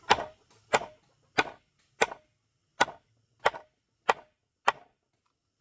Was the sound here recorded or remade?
recorded